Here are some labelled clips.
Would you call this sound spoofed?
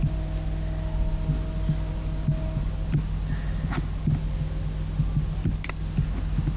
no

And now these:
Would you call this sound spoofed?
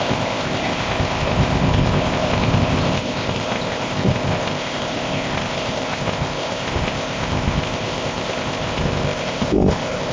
yes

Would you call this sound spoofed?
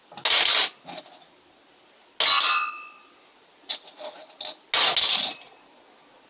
no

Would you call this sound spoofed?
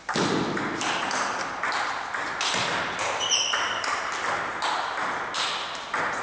no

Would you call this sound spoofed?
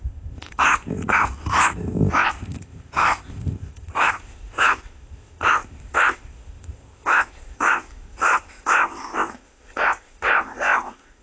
yes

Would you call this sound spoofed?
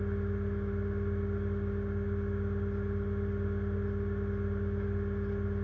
no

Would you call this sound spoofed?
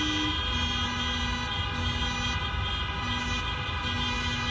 no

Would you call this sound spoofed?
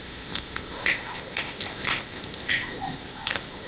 yes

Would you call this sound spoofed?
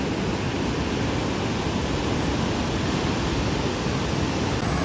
no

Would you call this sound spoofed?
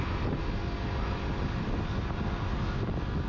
no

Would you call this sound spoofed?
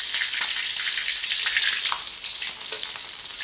no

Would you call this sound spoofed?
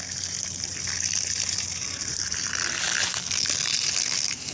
no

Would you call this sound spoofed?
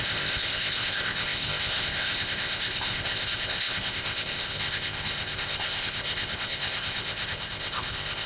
yes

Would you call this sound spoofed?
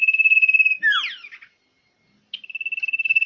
no